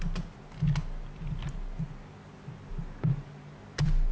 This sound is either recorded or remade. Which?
recorded